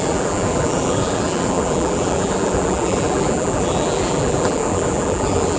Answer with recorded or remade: remade